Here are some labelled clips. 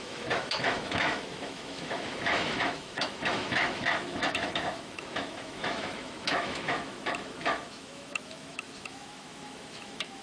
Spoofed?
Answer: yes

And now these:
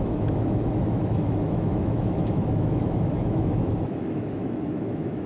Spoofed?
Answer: yes